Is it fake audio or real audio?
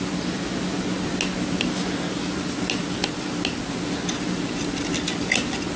real